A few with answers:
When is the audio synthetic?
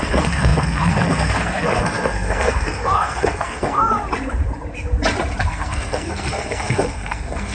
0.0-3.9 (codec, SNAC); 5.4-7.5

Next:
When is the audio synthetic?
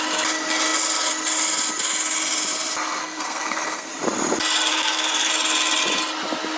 3.0-3.9 (codec, SNAC); 4.7-5.3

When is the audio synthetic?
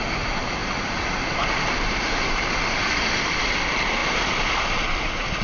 none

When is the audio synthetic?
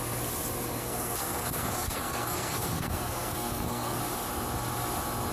0.8-4.0 (codec, SNAC)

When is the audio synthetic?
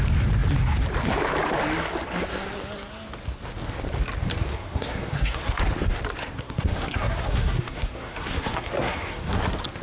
4.5-5.6 (codec, SNAC); 6.2-9.4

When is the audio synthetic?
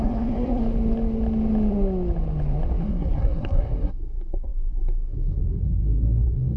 0.0-0.6 (codec, SNAC); 2.8-6.6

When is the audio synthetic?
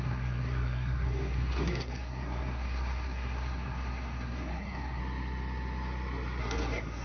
0.0-5.0 (codec, SNAC); 6.4-7.0